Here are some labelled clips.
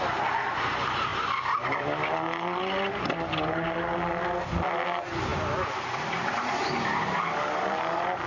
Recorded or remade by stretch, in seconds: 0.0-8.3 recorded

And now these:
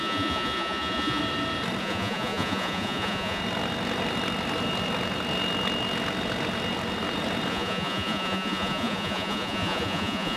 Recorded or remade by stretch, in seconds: 0.0-1.2 remade; 1.2-1.8 recorded; 1.8-3.4 remade; 3.4-7.5 recorded; 7.5-10.4 remade

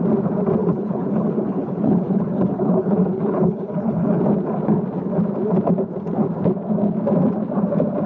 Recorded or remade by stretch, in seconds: 0.0-0.6 recorded; 0.6-4.2 remade; 4.2-8.1 recorded

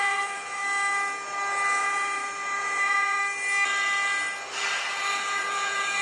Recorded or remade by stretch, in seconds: 0.0-0.6 remade; 0.6-1.8 recorded; 1.8-3.2 remade; 3.2-5.1 recorded; 5.1-6.0 remade

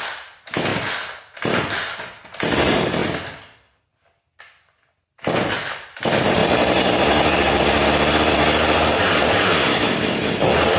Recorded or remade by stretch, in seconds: 0.0-9.7 recorded; 9.7-10.3 remade; 10.3-10.8 recorded

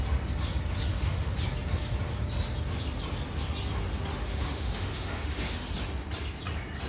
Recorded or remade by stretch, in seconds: 0.0-0.9 recorded; 0.9-1.4 remade; 1.4-4.1 recorded; 4.1-5.7 remade; 5.7-6.9 recorded